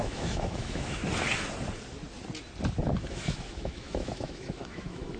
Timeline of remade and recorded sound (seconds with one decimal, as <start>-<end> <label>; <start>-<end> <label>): 0.0-1.0 remade; 1.0-3.1 recorded; 3.1-5.2 remade